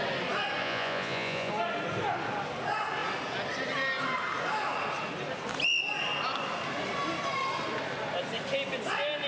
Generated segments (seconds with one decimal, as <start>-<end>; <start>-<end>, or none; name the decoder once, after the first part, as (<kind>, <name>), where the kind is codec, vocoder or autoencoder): 0.6-1.5 (vocoder, Vocos)